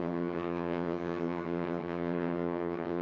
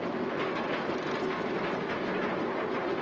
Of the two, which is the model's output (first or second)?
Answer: first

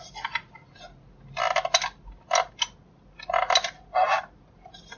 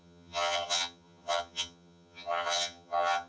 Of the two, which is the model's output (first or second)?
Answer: second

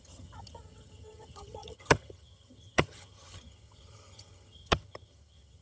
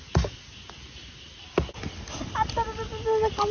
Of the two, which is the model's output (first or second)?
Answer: first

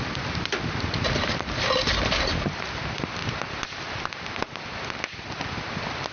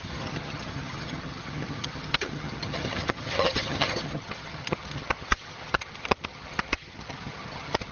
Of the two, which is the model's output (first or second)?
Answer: second